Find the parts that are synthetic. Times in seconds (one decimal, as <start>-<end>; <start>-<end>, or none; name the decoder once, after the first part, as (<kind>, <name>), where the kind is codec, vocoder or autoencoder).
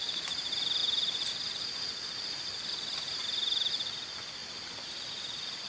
none